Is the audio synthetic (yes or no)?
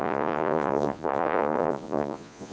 yes